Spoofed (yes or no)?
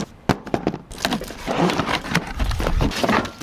no